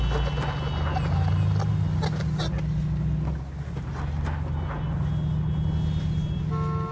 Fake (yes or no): no